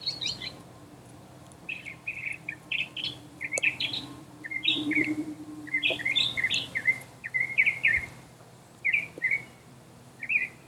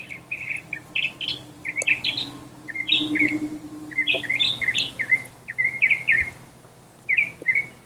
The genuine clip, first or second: second